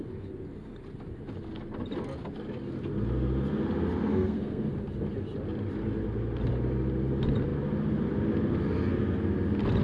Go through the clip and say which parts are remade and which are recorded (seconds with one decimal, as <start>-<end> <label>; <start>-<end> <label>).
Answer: 0.0-4.1 recorded; 4.1-4.7 remade; 4.7-9.8 recorded